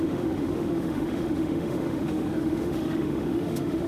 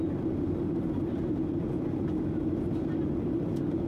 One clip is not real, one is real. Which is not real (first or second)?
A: first